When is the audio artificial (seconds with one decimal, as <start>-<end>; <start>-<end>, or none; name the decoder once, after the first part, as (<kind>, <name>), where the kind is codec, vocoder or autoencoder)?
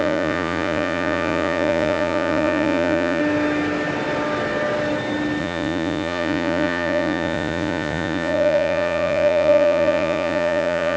0.0-3.2 (vocoder, Vocos); 5.4-11.0